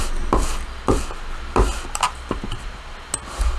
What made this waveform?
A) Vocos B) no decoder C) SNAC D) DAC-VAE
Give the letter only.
B